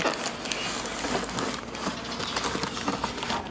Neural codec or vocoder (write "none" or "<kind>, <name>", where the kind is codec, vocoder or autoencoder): none